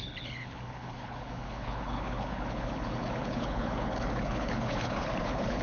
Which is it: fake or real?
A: fake